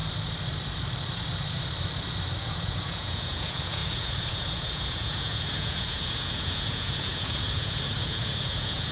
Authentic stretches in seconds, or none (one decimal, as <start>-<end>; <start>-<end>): 0.0-2.4